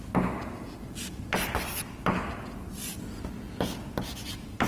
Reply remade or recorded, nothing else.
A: recorded